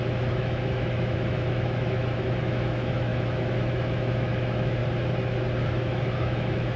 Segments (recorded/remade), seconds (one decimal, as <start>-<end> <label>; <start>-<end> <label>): 0.0-4.8 remade; 4.8-5.6 recorded; 5.6-6.8 remade